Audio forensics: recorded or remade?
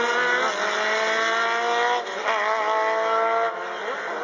recorded